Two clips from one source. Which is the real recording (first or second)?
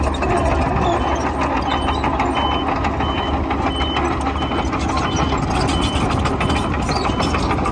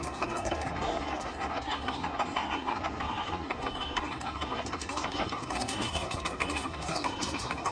first